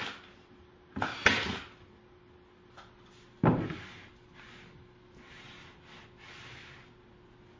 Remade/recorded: recorded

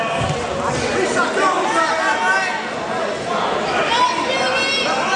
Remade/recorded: recorded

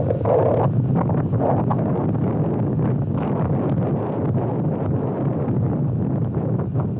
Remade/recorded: recorded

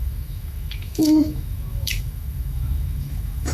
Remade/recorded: remade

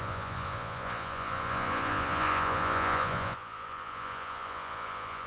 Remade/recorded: remade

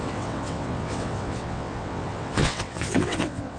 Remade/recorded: remade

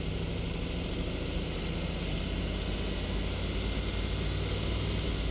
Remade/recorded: recorded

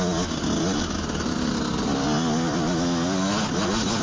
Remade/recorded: recorded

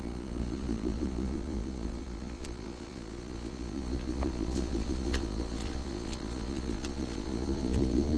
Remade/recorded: remade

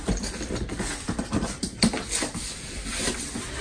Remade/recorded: recorded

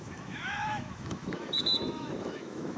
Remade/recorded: remade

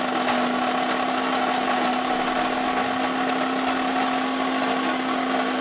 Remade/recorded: recorded